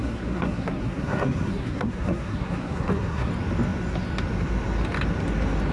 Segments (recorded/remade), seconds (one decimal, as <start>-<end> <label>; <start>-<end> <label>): 0.0-3.3 remade; 3.3-5.7 recorded